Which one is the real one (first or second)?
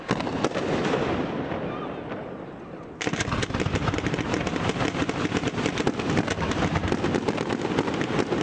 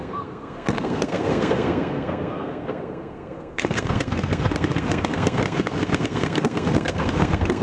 first